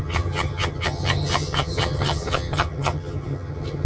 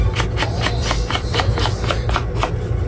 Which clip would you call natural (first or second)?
second